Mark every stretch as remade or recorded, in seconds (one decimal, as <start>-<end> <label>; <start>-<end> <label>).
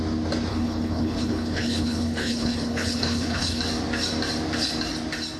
0.0-0.5 recorded; 0.5-3.6 remade; 3.6-5.4 recorded